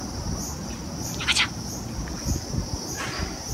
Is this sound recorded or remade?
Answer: recorded